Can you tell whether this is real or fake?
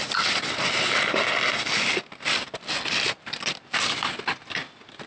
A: real